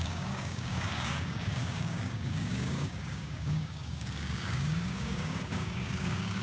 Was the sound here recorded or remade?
remade